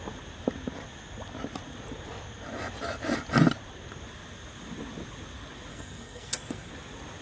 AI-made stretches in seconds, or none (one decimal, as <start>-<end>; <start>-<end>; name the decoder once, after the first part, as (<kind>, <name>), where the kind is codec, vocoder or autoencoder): 5.7-6.7 (codec, SNAC)